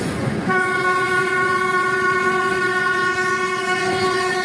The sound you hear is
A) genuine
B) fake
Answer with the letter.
B